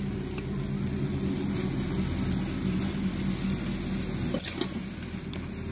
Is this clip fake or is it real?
real